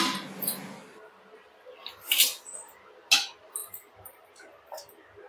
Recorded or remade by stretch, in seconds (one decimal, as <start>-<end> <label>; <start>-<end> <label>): 0.0-3.6 recorded; 3.6-4.3 remade; 4.3-5.3 recorded